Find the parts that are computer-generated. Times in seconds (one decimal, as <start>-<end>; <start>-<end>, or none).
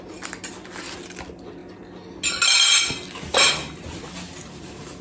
none